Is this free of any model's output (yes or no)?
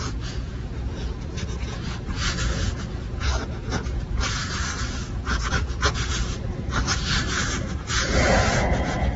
no